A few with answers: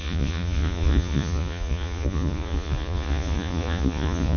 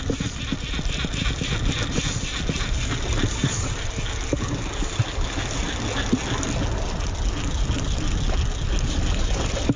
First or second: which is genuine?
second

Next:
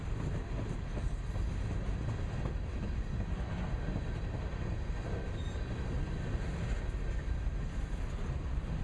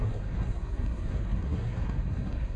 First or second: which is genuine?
first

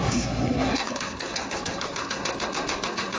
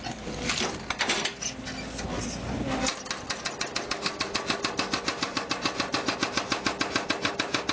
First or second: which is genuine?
second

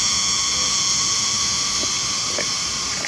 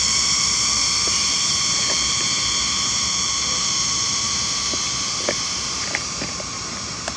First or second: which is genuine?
first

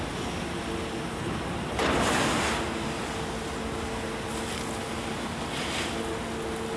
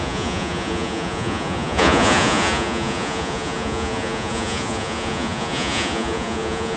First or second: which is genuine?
first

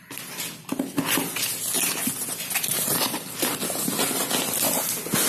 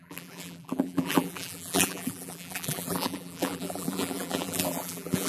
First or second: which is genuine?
first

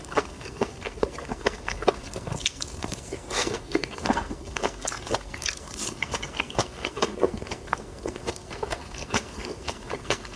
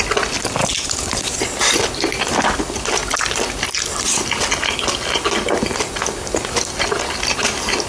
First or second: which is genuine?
second